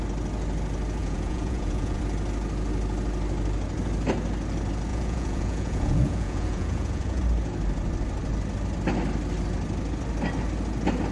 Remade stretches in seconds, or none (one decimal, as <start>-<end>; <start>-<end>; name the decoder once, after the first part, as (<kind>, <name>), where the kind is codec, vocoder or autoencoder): 1.0-2.0 (vocoder, Vocos); 4.9-7.2